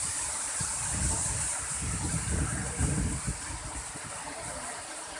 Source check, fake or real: real